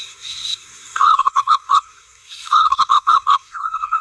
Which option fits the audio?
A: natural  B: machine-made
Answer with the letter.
B